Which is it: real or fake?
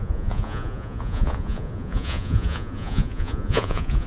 fake